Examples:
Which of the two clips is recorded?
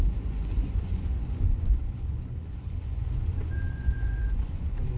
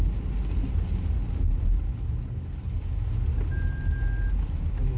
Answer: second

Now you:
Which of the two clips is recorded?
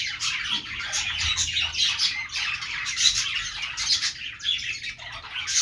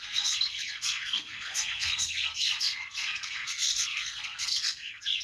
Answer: first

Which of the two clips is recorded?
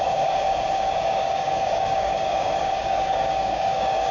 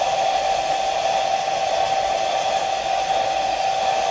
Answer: second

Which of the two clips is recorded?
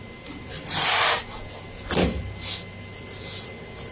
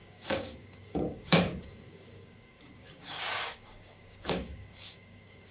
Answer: first